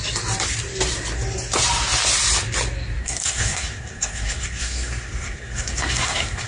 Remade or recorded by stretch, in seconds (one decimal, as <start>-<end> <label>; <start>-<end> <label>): 0.0-3.0 recorded; 3.0-6.5 remade